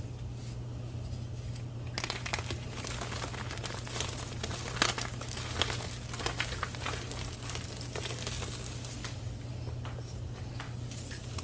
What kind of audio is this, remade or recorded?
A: recorded